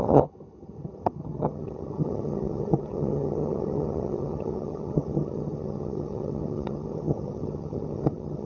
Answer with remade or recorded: remade